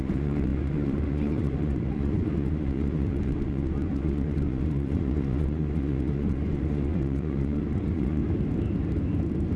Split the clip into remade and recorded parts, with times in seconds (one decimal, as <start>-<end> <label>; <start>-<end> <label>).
0.0-8.2 remade; 8.2-9.6 recorded